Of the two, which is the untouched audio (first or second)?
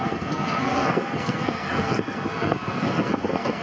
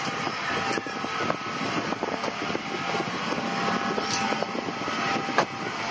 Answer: second